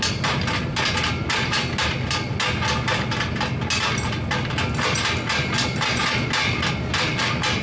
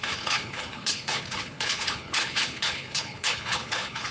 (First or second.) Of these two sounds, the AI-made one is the second